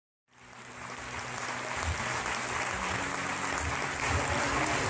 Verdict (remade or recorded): recorded